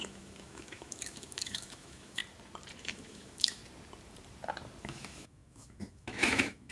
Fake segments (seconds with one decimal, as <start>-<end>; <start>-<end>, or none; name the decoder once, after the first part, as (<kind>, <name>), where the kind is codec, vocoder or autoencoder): 0.0-2.2 (autoencoder, DAC-VAE); 2.8-3.6; 4.8-6.7